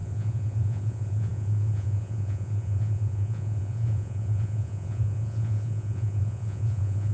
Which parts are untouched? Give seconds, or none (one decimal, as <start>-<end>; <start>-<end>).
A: none